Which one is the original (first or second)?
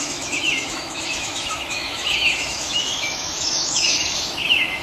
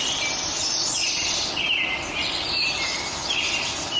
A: second